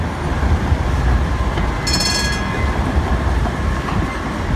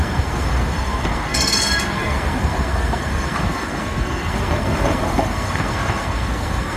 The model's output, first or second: second